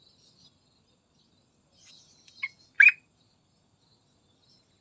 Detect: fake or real real